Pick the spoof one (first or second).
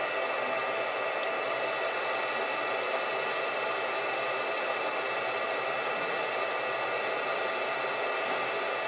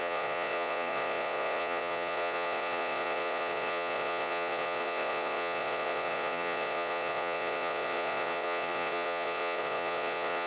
second